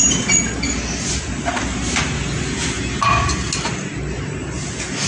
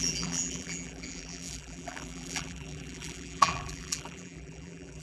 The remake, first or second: second